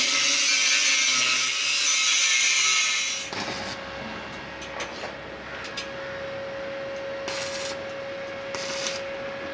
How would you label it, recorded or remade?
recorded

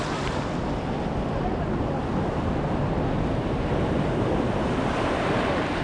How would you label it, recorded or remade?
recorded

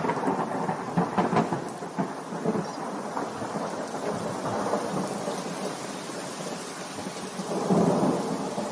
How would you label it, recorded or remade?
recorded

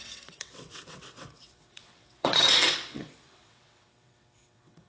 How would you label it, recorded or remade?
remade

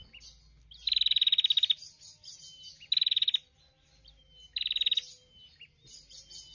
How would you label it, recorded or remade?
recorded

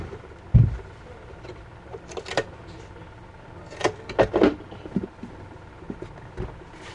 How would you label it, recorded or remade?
recorded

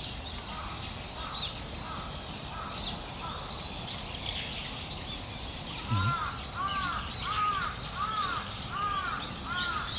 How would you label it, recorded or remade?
recorded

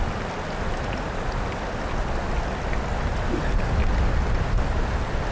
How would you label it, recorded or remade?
recorded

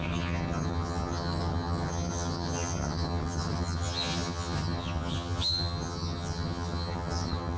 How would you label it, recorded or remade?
remade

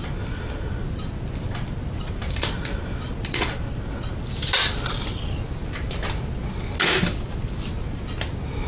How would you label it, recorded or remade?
recorded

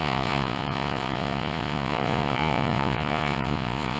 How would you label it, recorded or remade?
remade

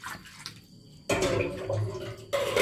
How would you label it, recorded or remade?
recorded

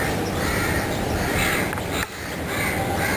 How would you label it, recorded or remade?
recorded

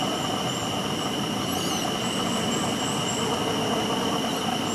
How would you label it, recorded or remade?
recorded